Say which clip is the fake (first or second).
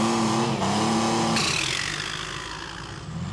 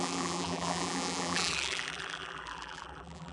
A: second